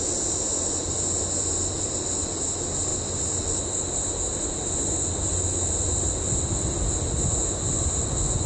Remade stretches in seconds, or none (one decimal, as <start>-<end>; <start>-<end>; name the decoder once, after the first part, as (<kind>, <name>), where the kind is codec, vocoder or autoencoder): none